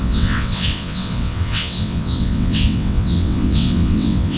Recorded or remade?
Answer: remade